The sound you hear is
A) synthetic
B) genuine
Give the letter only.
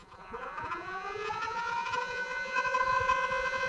A